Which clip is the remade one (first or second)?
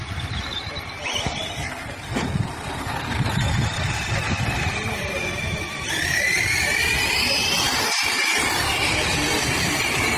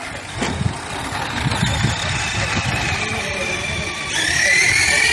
first